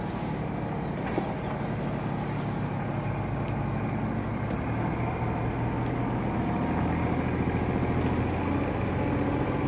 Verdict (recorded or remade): recorded